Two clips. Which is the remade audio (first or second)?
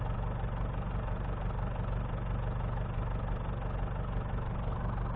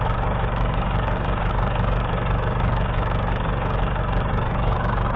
second